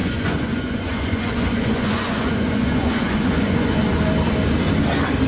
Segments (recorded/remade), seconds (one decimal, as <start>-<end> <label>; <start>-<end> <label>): 0.0-3.8 remade; 3.8-5.3 recorded

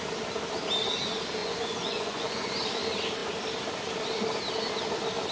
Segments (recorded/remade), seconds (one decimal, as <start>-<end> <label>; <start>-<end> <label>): 0.0-1.4 recorded; 1.4-2.5 remade; 2.5-5.3 recorded

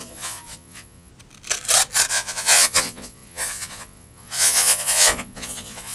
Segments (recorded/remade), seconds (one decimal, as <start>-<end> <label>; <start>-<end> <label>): 0.0-1.1 remade; 1.1-2.1 recorded; 2.1-5.9 remade

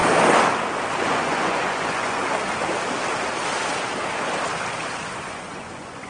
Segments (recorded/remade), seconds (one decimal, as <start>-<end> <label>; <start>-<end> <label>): 0.0-1.0 recorded; 1.0-2.2 remade; 2.2-5.1 recorded; 5.1-6.1 remade

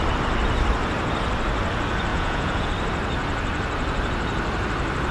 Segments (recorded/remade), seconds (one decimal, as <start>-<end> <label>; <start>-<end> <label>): 0.0-2.1 recorded; 2.1-2.7 remade; 2.7-5.1 recorded

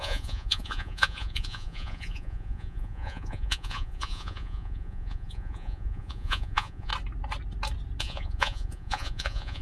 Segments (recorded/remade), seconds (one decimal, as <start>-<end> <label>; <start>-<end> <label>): 0.0-6.9 remade; 6.9-8.0 recorded; 8.0-9.6 remade

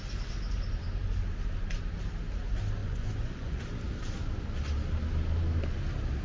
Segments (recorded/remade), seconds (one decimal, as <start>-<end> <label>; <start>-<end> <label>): 0.0-2.8 recorded; 2.8-3.6 remade; 3.6-6.2 recorded

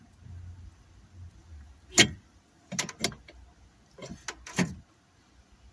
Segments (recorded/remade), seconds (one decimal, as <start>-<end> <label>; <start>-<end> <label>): 0.0-5.7 recorded